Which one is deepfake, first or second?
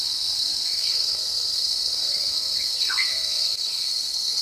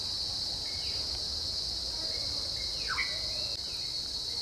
first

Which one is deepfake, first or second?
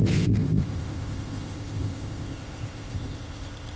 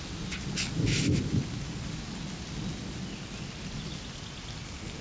first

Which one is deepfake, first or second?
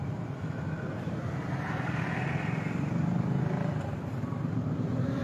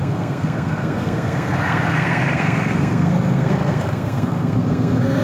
second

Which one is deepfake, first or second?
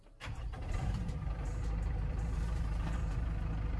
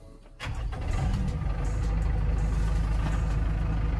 first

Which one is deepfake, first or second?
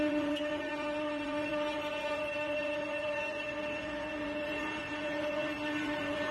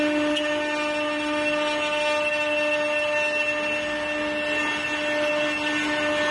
first